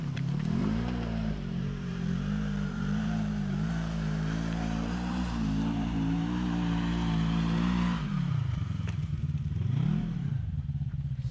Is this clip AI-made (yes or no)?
yes